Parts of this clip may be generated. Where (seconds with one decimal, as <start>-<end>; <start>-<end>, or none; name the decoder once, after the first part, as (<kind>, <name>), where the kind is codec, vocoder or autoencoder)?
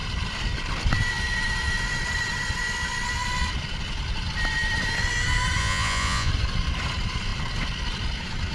5.6-6.3 (vocoder, Vocos)